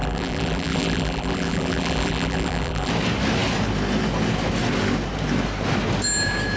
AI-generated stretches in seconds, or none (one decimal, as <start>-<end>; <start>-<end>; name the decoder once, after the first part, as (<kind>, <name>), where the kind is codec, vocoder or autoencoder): 0.0-2.9 (vocoder, BigVGAN v2)